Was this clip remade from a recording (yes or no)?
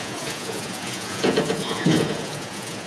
yes